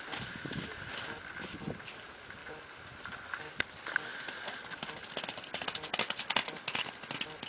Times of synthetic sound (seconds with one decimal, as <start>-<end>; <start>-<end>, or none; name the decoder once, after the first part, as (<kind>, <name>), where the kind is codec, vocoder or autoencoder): none